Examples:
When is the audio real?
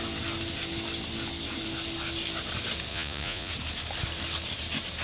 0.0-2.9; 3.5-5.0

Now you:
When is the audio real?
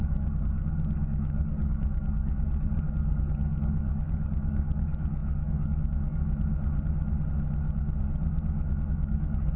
6.2-8.9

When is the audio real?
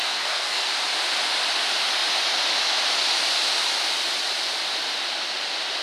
0.7-5.8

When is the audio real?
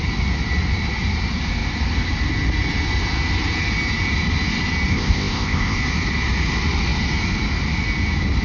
0.0-4.9; 5.8-8.4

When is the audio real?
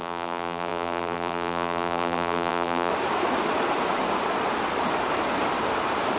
2.9-6.2